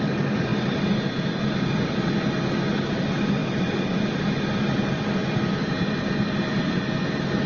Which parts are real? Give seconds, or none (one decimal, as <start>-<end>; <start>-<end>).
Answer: 0.0-7.5